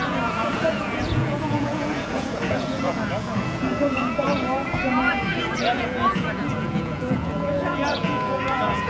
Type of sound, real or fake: fake